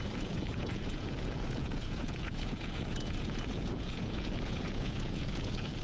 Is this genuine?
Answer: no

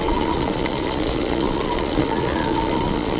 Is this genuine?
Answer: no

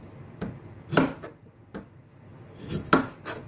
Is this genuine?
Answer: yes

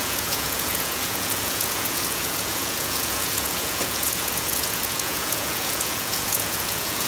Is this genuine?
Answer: no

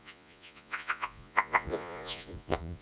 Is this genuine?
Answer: no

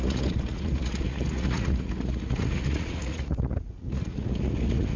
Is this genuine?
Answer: no